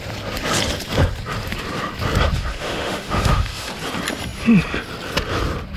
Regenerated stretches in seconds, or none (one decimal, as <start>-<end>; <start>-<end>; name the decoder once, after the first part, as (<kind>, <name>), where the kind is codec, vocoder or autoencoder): 2.5-3.7 (autoencoder, DAC-VAE)